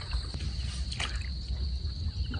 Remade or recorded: recorded